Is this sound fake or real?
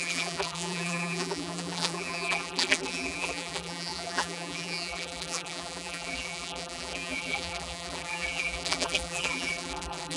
fake